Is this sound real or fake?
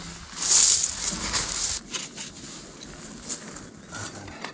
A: real